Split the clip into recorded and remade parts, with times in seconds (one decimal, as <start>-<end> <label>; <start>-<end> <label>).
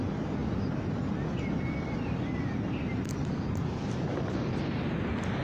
0.0-5.4 recorded